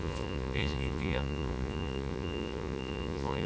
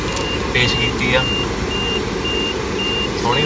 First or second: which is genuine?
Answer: second